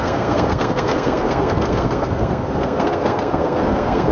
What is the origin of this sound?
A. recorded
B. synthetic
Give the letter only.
B